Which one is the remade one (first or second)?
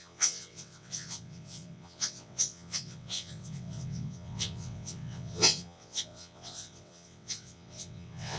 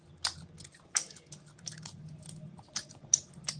first